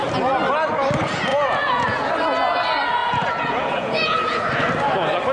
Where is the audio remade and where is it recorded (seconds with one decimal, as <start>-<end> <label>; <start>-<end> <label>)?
0.0-1.3 recorded; 1.3-2.1 remade; 2.1-3.0 recorded; 3.0-4.4 remade; 4.4-5.3 recorded